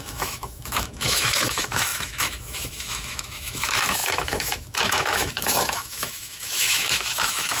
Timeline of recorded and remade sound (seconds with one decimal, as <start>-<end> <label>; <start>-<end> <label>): 0.0-7.6 remade